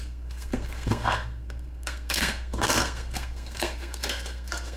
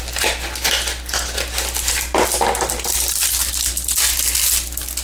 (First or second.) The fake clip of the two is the first